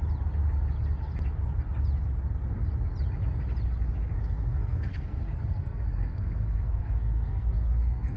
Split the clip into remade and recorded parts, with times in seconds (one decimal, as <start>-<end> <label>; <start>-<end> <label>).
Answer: 0.0-4.2 recorded; 4.2-8.2 remade